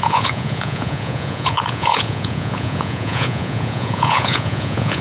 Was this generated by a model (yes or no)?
yes